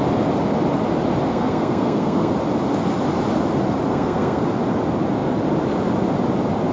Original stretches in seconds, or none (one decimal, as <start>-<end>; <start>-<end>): 0.0-1.3; 2.3-3.9; 4.4-6.7